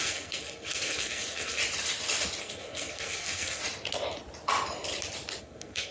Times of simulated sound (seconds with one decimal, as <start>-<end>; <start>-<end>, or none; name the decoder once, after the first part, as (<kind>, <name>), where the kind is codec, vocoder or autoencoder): 0.0-1.6 (codec, SNAC); 2.4-3.6; 5.4-5.9